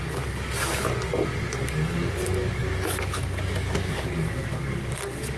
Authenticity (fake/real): fake